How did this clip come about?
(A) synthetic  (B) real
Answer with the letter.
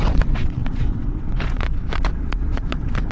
A